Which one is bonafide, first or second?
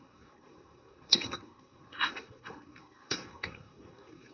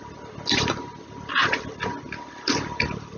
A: second